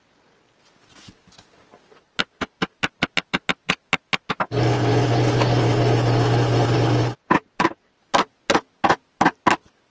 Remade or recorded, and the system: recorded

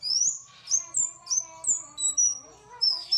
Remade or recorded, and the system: recorded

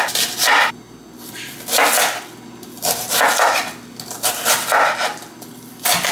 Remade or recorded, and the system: recorded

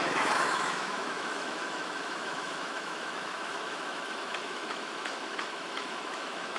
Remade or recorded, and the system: remade, autoencoder, DAC-VAE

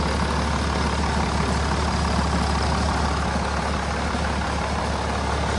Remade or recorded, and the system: recorded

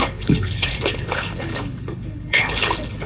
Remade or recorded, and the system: remade, codec, HILCodec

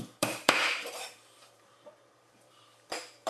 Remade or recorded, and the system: remade, vocoder, BigVGAN v2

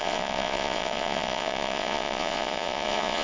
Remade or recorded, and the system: remade, vocoder, Vocos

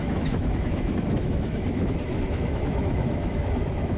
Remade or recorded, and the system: remade, autoencoder, DAC-VAE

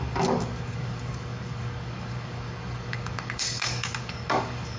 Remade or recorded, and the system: remade, codec, DAC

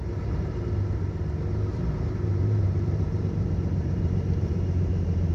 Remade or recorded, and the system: remade, vocoder, BigVGAN v2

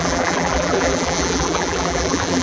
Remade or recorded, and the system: remade, vocoder, BigVGAN v2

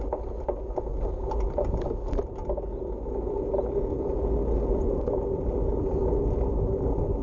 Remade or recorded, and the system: recorded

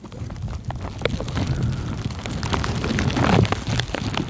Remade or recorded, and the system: recorded